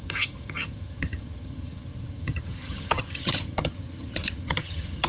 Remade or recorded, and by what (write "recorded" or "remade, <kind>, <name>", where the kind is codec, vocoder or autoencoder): remade, vocoder, HiFi-GAN